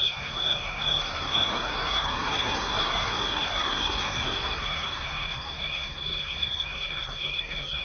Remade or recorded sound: remade